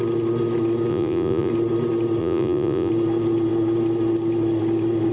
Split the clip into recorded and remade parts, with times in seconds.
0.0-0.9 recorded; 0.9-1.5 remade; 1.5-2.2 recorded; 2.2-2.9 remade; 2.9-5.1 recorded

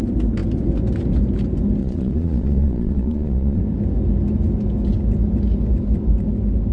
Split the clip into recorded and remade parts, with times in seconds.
0.0-1.8 recorded; 1.8-3.6 remade; 3.6-6.7 recorded

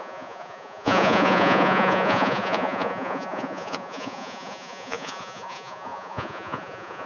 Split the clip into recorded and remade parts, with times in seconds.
0.0-7.1 remade

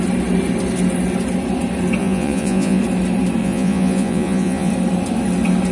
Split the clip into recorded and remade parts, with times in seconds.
0.0-2.0 recorded; 2.0-2.8 remade; 2.8-3.4 recorded; 3.4-4.7 remade; 4.7-5.7 recorded

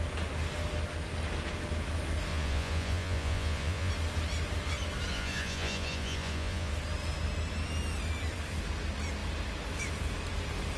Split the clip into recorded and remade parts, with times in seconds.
0.0-2.3 recorded; 2.3-3.9 remade; 3.9-5.1 recorded; 5.1-6.7 remade; 6.7-10.8 recorded